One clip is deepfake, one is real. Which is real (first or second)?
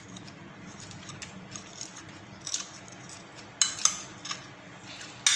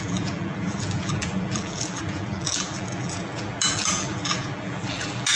first